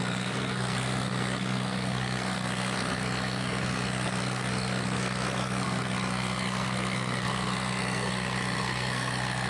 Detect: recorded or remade remade